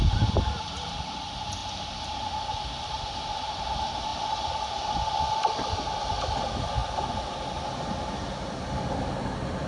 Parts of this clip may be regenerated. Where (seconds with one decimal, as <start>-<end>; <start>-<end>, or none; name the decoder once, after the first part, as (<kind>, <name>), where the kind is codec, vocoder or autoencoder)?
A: none